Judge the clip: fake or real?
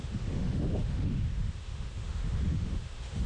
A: fake